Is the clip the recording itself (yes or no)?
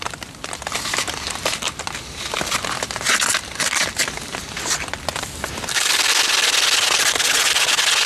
yes